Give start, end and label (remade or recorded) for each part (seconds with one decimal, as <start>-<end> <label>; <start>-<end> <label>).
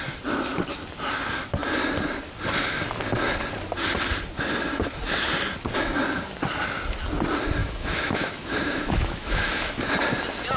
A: 0.0-7.6 recorded; 7.6-9.8 remade; 9.8-10.6 recorded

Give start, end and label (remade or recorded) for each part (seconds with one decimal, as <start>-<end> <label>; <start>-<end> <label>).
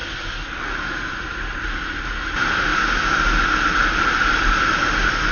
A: 0.0-5.3 recorded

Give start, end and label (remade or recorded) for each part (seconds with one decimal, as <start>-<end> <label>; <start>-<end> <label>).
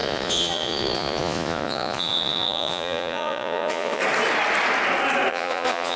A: 0.0-4.0 remade; 4.0-5.3 recorded; 5.3-6.0 remade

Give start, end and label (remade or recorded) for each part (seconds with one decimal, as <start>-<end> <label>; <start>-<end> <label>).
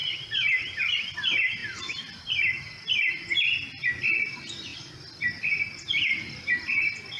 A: 0.0-0.8 remade; 0.8-7.2 recorded